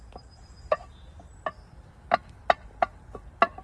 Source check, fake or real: real